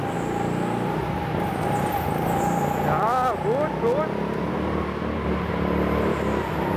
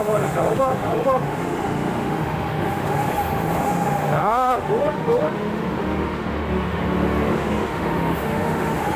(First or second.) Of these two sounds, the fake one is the second